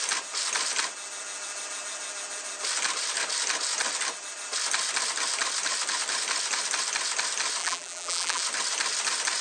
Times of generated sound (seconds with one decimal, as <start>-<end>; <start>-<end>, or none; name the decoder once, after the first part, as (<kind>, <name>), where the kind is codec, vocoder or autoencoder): 7.6-8.4 (vocoder, BigVGAN v2)